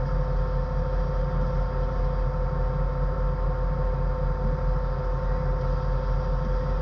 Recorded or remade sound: recorded